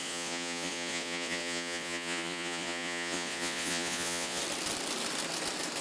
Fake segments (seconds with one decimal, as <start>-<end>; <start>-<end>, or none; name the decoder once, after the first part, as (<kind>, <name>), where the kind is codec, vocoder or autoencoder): 0.0-4.4 (vocoder, Vocos)